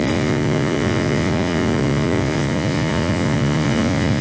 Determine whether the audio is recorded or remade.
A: remade